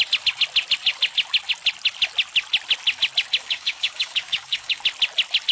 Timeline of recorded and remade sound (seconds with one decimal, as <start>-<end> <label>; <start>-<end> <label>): 0.0-3.4 recorded; 3.4-4.8 remade; 4.8-5.5 recorded

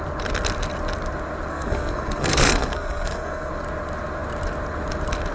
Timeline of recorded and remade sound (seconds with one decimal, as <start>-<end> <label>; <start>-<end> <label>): 0.0-1.5 recorded; 1.5-3.5 remade; 3.5-5.3 recorded